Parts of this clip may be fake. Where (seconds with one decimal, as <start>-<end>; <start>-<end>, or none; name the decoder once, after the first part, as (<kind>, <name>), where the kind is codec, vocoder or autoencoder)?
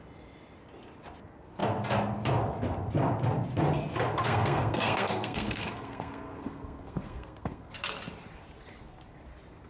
4.1-7.7 (codec, SNAC)